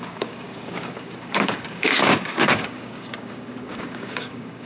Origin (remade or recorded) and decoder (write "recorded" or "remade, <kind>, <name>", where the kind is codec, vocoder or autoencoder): remade, codec, DAC